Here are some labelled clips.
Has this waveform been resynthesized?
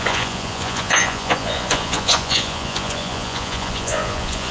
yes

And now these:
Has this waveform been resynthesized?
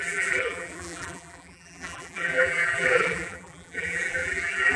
yes